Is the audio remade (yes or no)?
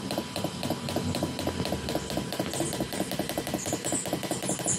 no